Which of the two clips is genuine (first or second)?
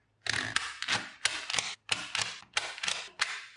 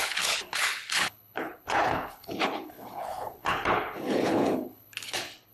first